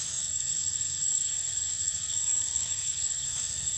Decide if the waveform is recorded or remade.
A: remade